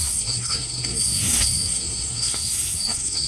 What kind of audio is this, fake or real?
fake